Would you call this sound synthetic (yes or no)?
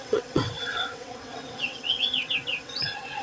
yes